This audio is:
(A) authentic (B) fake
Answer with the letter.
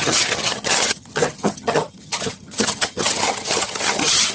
B